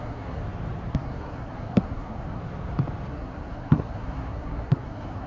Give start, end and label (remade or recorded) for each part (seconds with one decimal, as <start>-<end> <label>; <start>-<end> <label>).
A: 0.0-0.4 remade; 0.4-0.9 recorded; 0.9-2.4 remade; 2.4-3.1 recorded; 3.1-5.3 remade